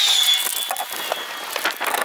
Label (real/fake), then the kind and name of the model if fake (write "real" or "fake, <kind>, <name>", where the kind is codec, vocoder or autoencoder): real